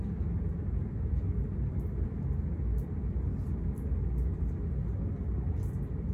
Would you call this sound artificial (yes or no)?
no